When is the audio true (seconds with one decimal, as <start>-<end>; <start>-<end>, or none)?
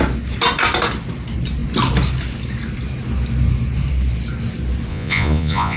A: 0.0-4.9